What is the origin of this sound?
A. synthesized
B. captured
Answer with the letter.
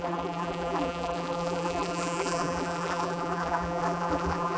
A